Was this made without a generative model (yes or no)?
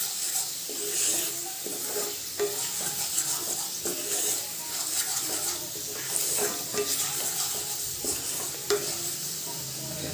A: yes